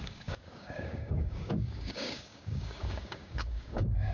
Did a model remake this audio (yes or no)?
yes